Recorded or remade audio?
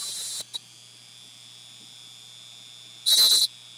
recorded